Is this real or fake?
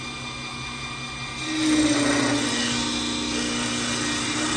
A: real